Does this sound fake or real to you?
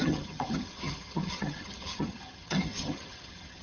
fake